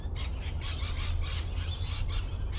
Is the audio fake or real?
real